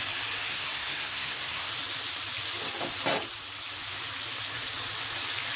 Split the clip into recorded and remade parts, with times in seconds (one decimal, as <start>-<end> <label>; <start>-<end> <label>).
0.0-0.5 recorded; 0.5-1.7 remade; 1.7-5.6 recorded